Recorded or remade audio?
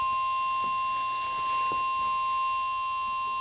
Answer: recorded